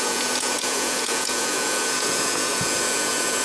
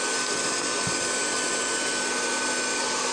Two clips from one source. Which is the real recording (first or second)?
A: second